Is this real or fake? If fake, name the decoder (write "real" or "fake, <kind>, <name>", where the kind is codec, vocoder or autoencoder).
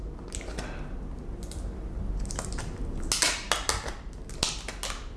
real